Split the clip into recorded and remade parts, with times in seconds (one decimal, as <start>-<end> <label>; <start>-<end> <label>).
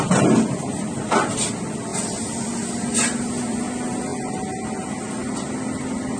0.0-6.2 recorded